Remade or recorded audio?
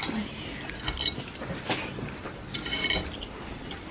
recorded